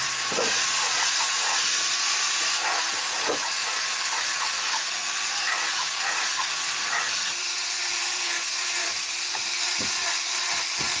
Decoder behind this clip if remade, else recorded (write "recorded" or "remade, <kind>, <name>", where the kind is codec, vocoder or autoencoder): remade, vocoder, Vocos